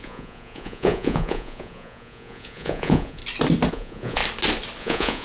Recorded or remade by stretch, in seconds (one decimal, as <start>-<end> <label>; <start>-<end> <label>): 0.0-3.2 remade; 3.2-3.7 recorded; 3.7-4.2 remade; 4.2-4.8 recorded; 4.8-5.2 remade

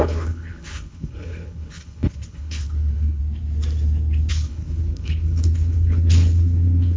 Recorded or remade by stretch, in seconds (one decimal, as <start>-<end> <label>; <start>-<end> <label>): 0.0-3.2 remade; 3.2-4.3 recorded; 4.3-7.0 remade

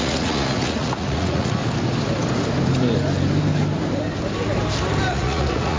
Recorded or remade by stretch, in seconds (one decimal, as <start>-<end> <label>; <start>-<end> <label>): 0.0-1.6 remade; 1.6-5.1 recorded; 5.1-5.8 remade

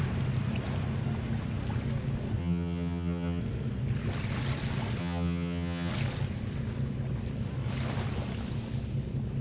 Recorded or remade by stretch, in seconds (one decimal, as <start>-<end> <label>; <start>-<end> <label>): 0.0-2.4 recorded; 2.4-3.4 remade; 3.4-5.0 recorded; 5.0-5.9 remade; 5.9-9.4 recorded

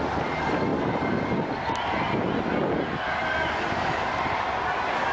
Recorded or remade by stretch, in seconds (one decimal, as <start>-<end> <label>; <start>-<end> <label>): 0.0-5.1 recorded

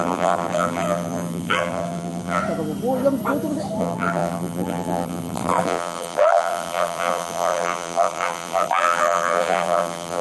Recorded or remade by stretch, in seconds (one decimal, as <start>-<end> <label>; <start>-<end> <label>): 0.0-2.4 remade; 2.4-3.8 recorded; 3.8-10.2 remade